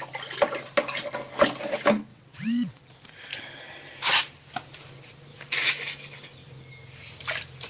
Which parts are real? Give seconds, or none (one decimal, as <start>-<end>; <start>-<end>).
0.0-2.1; 2.8-7.7